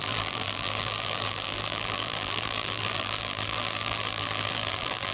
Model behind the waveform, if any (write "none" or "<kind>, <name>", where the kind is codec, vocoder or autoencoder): vocoder, BigVGAN v2